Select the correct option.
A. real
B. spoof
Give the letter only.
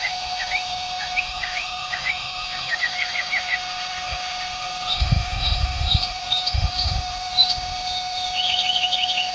B